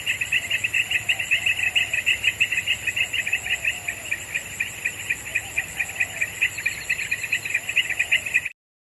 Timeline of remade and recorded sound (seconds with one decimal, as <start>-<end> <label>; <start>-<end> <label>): 0.0-8.8 recorded